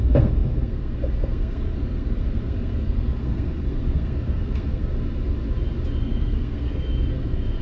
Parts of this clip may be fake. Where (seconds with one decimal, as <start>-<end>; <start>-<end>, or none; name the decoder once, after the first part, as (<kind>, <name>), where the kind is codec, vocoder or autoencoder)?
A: 0.0-4.9 (codec, SNAC); 6.0-7.6